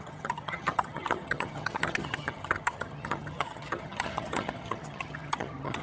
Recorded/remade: remade